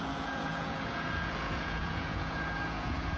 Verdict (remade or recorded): remade